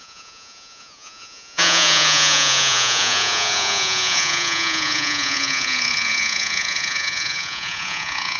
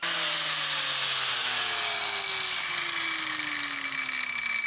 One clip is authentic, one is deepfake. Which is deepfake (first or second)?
first